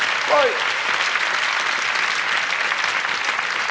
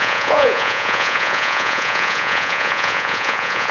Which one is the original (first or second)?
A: first